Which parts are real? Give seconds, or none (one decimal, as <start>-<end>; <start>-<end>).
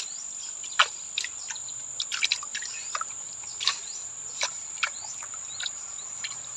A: 0.0-2.5